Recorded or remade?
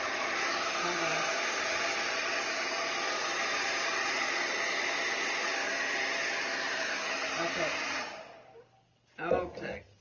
recorded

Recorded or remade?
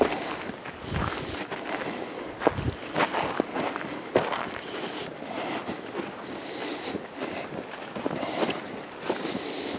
recorded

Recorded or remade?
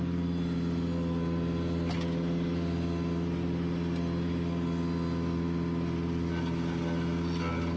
recorded